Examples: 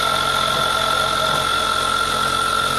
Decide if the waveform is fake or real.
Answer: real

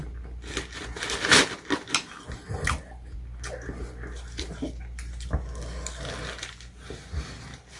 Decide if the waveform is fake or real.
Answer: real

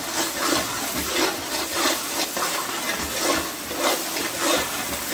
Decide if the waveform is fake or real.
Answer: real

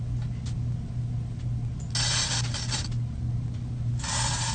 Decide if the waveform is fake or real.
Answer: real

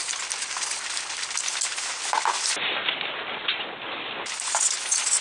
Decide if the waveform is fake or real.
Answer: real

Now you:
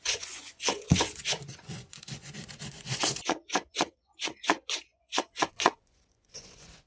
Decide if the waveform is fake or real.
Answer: fake